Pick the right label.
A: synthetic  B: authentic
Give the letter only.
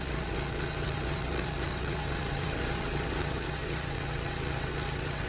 A